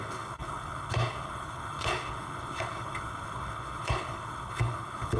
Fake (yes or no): yes